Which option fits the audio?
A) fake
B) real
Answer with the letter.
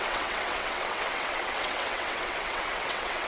A